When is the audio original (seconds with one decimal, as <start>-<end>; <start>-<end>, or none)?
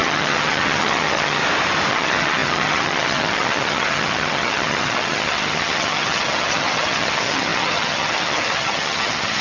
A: 1.4-1.9